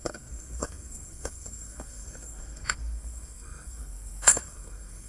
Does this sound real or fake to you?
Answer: fake